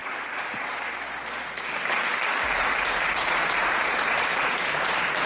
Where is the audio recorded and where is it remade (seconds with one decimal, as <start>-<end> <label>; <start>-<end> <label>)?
0.0-3.2 recorded; 3.2-5.3 remade